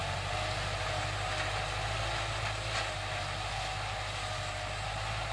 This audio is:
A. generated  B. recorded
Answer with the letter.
B